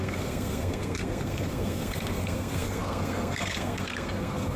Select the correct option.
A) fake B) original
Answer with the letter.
A